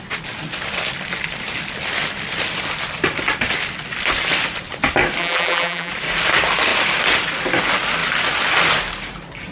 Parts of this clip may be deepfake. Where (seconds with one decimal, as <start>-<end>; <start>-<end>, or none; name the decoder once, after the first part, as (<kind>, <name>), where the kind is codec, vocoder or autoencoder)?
5.2-5.9 (vocoder, BigVGAN v2)